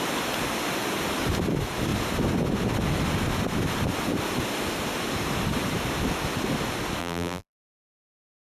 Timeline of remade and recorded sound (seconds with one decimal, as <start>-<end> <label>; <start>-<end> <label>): 0.0-7.0 recorded; 7.0-8.2 remade; 8.2-8.6 recorded